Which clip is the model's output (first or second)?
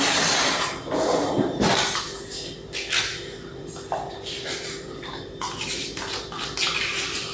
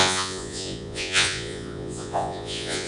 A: second